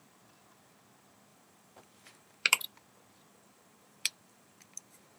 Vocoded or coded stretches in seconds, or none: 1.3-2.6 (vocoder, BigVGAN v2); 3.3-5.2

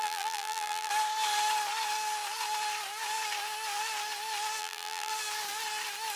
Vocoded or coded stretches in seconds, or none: 0.0-0.9 (vocoder, BigVGAN v2); 4.6-5.1

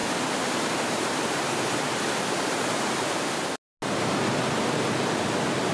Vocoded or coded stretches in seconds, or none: 0.0-3.4 (vocoder, BigVGAN v2)

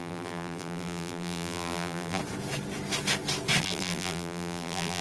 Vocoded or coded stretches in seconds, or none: 0.0-2.2 (vocoder, BigVGAN v2); 3.6-5.0

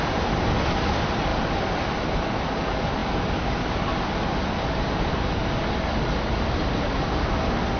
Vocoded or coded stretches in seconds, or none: none

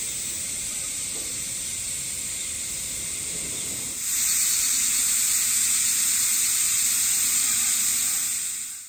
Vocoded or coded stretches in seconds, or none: 0.0-8.9 (vocoder, BigVGAN v2)

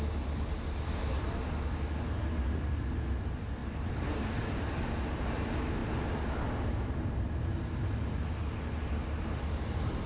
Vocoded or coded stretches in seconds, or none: 3.6-4.5 (vocoder, BigVGAN v2)

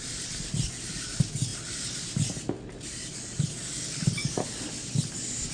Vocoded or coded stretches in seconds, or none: 4.2-4.7 (vocoder, BigVGAN v2)